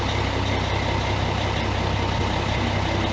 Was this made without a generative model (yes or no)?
yes